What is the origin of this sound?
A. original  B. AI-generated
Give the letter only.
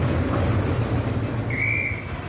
A